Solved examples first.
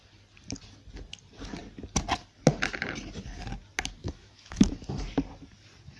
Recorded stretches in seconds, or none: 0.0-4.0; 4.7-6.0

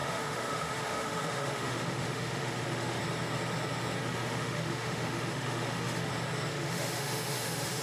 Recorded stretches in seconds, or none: 3.0-4.0; 6.1-6.5

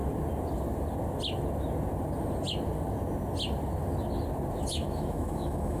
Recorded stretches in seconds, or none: 0.0-4.7